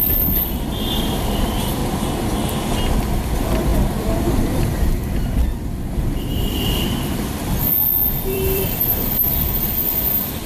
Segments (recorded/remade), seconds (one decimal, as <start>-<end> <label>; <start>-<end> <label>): 0.0-1.8 remade; 1.8-3.0 recorded; 3.0-10.5 remade